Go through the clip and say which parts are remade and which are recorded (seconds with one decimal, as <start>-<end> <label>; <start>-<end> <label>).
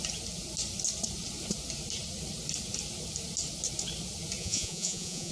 0.0-4.4 recorded; 4.4-5.3 remade